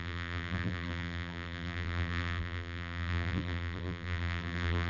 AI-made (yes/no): yes